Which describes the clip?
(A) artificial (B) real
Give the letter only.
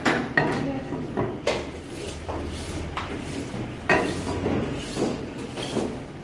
B